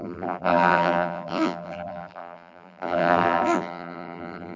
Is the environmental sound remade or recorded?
remade